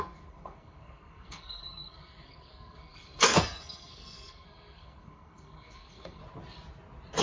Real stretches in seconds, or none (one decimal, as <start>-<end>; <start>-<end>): 6.2-7.2